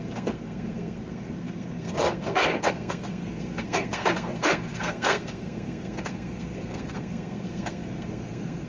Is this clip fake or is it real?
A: fake